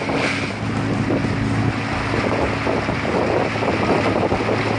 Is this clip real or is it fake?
real